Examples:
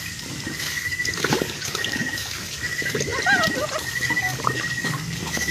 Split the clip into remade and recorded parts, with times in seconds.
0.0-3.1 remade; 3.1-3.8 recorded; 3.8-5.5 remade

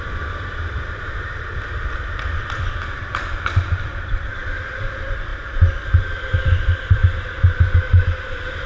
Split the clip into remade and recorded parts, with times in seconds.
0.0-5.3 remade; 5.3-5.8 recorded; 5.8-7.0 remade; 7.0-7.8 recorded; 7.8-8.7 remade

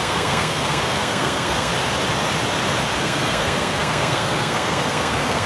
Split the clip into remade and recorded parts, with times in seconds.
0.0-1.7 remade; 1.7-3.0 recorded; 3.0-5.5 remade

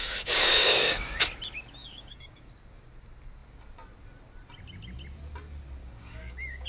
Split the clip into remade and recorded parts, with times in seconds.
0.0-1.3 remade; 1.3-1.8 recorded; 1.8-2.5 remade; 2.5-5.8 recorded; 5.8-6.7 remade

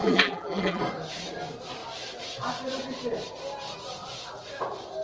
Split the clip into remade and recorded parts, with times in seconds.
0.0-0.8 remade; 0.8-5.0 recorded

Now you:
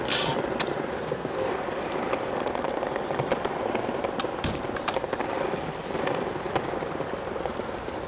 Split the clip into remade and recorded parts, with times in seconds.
0.0-1.0 recorded; 1.0-1.5 remade; 1.5-8.1 recorded

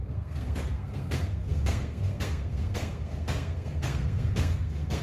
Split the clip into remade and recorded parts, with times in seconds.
0.0-5.0 remade